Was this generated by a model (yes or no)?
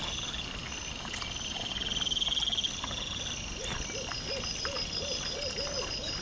no